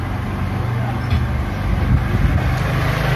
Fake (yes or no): no